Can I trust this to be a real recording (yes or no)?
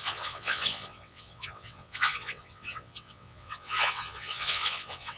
no